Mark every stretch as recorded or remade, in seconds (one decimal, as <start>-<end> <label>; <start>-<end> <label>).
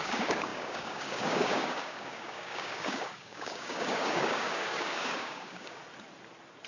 0.0-5.8 remade; 5.8-6.7 recorded